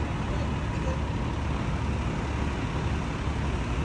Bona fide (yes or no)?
yes